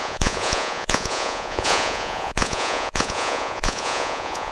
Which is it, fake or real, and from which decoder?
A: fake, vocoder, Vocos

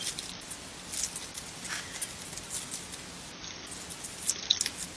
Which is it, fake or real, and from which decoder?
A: real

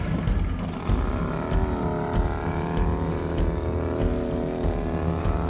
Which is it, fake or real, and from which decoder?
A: real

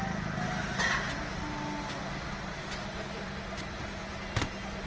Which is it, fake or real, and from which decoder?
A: real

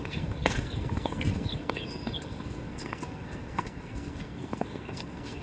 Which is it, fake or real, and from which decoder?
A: fake, codec, SNAC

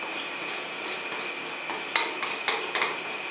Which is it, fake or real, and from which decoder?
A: real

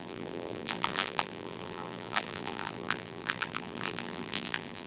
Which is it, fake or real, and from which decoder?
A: fake, vocoder, BigVGAN v2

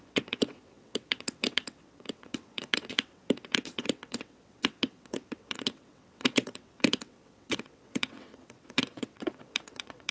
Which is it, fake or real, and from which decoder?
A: fake, vocoder, WaveNeXt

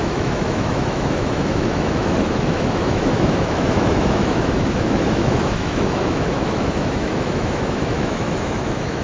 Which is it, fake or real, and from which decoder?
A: fake, autoencoder, DAC-VAE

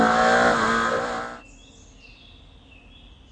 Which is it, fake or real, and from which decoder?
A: real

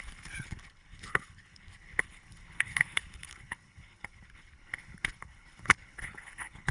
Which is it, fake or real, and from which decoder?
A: fake, codec, HILCodec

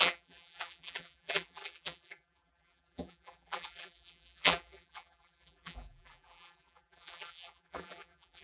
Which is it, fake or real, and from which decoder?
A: fake, vocoder, BigVGAN v2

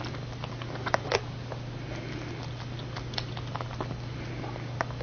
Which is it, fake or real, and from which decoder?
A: real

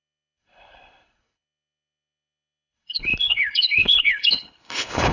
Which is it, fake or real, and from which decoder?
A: fake, codec, HILCodec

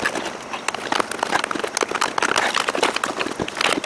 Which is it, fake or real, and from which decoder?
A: real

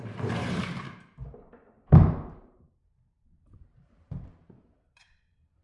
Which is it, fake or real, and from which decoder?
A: fake, vocoder, BigVGAN v2